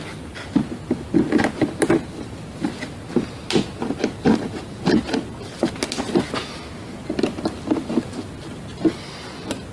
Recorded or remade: recorded